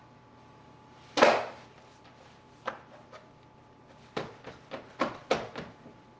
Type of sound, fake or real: real